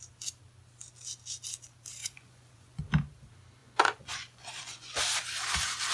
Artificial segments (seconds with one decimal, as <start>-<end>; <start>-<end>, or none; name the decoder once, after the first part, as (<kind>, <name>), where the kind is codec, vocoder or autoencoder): 2.0-2.8 (vocoder, Vocos); 3.6-5.0